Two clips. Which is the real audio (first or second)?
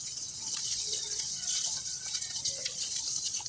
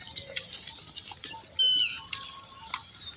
second